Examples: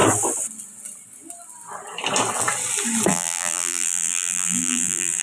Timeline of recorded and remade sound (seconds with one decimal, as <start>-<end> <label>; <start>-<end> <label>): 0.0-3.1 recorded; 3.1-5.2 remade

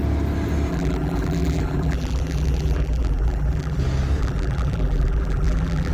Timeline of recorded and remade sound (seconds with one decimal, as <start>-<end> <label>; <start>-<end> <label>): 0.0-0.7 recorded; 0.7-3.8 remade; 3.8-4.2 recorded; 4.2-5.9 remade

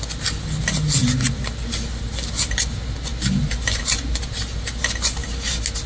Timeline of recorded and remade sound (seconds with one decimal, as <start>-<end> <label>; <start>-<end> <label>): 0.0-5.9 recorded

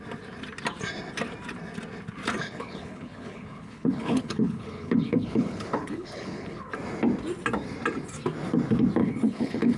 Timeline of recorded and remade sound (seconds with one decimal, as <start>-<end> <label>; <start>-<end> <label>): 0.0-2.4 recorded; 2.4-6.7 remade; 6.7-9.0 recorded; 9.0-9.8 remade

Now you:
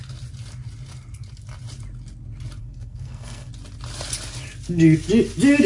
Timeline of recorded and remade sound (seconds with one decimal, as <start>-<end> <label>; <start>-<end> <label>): 0.0-2.6 recorded; 2.6-3.5 remade; 3.5-5.7 recorded